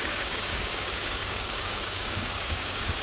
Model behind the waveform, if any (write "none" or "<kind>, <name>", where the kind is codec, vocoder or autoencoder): codec, DAC